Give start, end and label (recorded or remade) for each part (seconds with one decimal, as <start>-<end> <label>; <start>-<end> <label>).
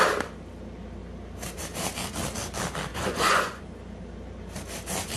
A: 0.0-2.9 recorded; 2.9-3.6 remade; 3.6-5.2 recorded